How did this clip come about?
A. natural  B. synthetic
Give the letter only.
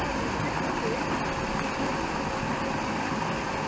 A